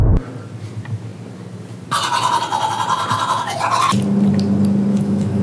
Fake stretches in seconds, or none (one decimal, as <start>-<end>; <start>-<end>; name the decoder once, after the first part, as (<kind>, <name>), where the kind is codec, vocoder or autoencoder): 4.9-5.4 (autoencoder, DAC-VAE)